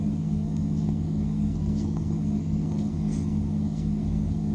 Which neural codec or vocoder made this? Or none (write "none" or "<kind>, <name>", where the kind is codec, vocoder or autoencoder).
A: codec, SNAC